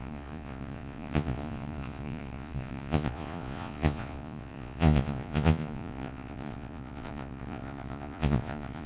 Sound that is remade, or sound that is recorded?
remade